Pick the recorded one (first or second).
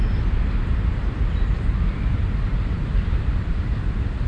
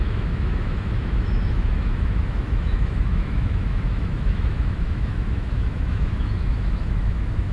first